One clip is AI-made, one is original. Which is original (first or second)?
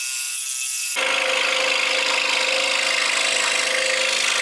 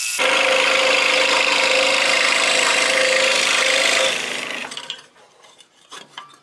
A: first